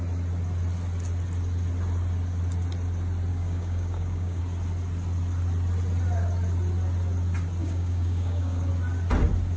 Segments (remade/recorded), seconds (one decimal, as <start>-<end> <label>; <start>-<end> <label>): 0.0-3.3 recorded; 3.3-4.4 remade; 4.4-7.6 recorded; 7.6-8.7 remade; 8.7-9.6 recorded